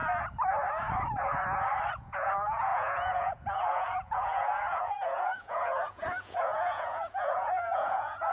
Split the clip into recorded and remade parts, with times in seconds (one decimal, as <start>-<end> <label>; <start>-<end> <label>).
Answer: 0.0-1.9 recorded; 1.9-8.3 remade